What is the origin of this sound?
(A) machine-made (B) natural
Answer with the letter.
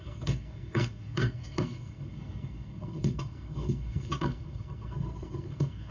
A